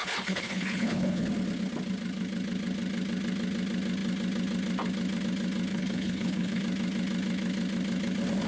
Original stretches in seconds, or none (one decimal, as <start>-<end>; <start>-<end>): 1.3-5.7; 6.6-8.5